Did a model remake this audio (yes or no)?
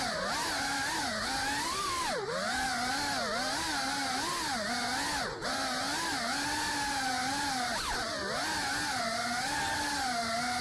no